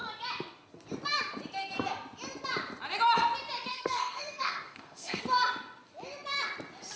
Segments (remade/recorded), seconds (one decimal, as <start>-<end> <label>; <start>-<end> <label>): 0.0-3.7 recorded; 3.7-5.2 remade; 5.2-7.0 recorded